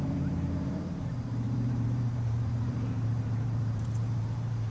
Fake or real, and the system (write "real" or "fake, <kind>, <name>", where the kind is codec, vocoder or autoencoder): fake, vocoder, BigVGAN v2